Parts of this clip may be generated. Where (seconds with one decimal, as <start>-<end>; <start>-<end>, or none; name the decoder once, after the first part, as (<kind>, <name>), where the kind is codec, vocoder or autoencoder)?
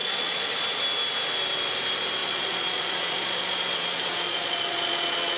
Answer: 0.0-0.5 (vocoder, Vocos); 2.2-5.4